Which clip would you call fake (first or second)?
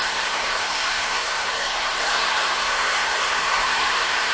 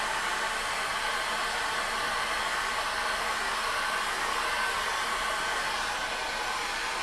first